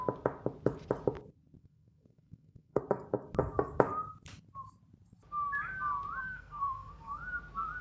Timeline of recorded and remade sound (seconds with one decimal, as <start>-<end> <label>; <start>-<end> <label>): 0.0-1.6 recorded; 1.6-2.8 remade; 2.8-6.2 recorded; 6.2-7.2 remade; 7.2-7.8 recorded